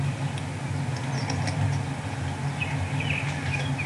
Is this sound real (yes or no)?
yes